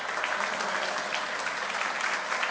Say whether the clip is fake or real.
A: real